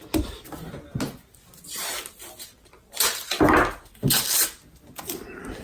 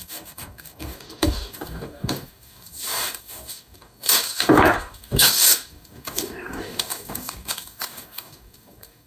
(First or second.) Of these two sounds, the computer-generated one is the second